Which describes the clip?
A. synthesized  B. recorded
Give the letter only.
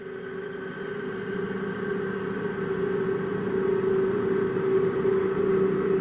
B